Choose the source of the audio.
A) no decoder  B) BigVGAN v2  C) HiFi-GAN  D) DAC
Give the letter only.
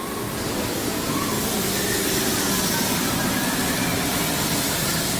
A